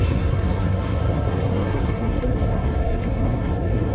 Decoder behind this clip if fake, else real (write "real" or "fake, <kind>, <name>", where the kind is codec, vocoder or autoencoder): fake, codec, SNAC